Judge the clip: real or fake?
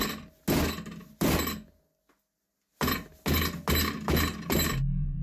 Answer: real